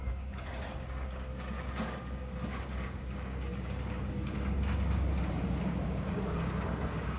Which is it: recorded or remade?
remade